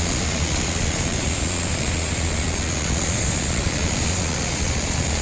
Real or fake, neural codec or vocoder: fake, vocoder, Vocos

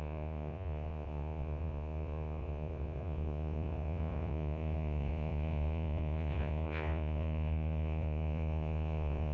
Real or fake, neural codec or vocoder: fake, vocoder, Vocos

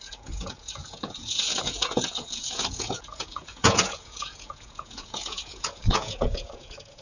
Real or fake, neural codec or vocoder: fake, vocoder, Vocos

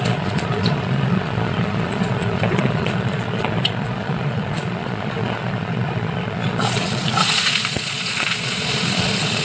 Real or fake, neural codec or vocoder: fake, vocoder, Vocos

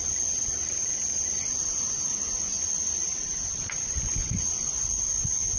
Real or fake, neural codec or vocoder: real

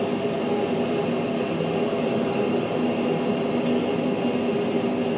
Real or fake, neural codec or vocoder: real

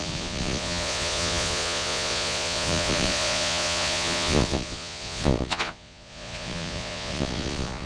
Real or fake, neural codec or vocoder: fake, vocoder, Vocos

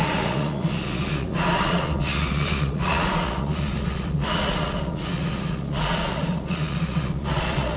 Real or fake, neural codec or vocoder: fake, vocoder, Vocos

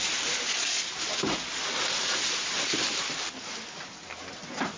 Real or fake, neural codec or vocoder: real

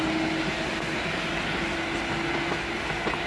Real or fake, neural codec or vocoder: real